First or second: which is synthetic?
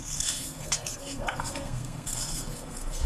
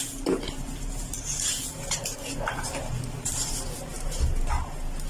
first